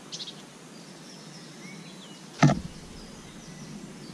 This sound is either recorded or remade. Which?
recorded